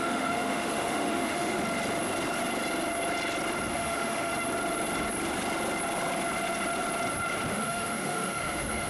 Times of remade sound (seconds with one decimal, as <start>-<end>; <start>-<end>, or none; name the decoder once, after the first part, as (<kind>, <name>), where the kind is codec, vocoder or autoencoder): 0.0-1.6 (autoencoder, DAC-VAE); 3.7-4.3; 7.5-8.9